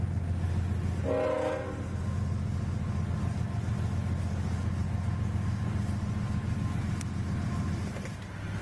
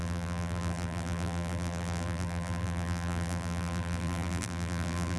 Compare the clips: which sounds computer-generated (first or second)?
second